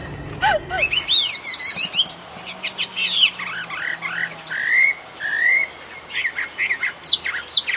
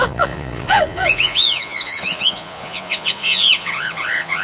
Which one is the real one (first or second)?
first